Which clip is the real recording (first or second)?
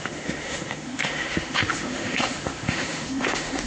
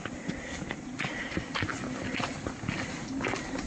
second